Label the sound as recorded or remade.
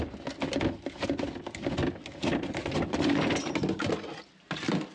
recorded